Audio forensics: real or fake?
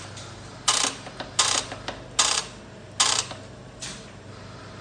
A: real